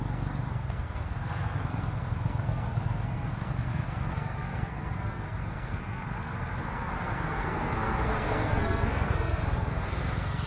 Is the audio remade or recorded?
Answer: remade